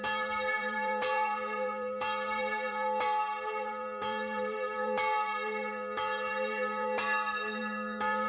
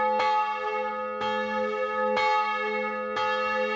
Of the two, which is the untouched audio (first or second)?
second